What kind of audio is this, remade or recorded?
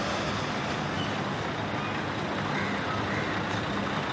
recorded